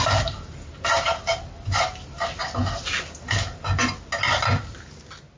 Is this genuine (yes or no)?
yes